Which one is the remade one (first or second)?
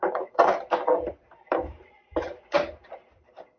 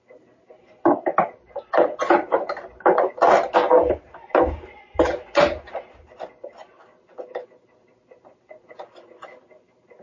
first